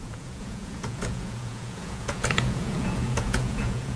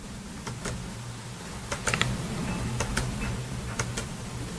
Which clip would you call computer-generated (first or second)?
first